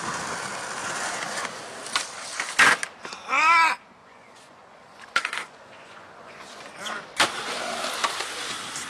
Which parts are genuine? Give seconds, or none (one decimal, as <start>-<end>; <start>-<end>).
0.0-0.8; 1.6-4.0; 7.0-8.9